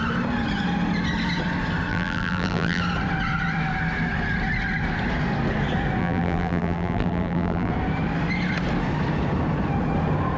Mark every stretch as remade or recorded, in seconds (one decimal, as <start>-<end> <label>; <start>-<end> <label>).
0.0-1.9 recorded; 1.9-2.8 remade; 2.8-6.0 recorded; 6.0-7.7 remade; 7.7-10.4 recorded